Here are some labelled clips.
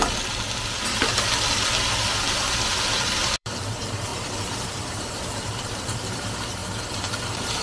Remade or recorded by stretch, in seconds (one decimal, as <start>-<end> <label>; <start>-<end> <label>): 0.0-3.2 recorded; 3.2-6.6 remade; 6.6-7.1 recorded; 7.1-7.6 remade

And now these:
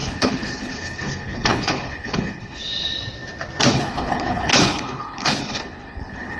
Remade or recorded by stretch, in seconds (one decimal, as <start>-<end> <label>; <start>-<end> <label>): 0.0-2.6 remade; 2.6-3.7 recorded; 3.7-6.4 remade

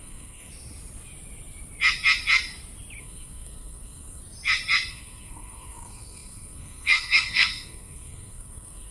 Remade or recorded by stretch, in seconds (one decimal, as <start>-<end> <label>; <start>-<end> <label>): 0.0-0.5 remade; 0.5-3.0 recorded; 3.0-4.2 remade; 4.2-4.9 recorded; 4.9-8.9 remade

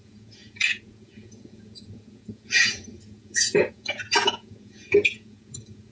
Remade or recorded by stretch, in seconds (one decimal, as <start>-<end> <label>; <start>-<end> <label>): 0.0-5.9 remade

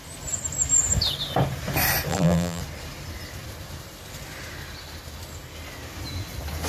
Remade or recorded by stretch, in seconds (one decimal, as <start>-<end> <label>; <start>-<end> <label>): 0.0-2.1 recorded; 2.1-2.6 remade; 2.6-6.7 recorded

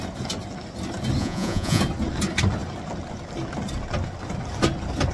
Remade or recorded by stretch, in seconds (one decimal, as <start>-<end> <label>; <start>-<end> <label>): 0.0-1.2 recorded; 1.2-1.8 remade; 1.8-5.1 recorded

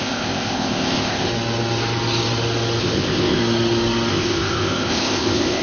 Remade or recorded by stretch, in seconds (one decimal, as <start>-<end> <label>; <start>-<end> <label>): 0.0-1.3 remade; 1.3-2.8 recorded; 2.8-3.4 remade; 3.4-4.1 recorded; 4.1-5.6 remade

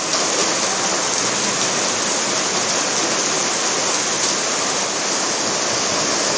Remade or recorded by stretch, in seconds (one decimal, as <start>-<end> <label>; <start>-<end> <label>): 0.0-6.4 recorded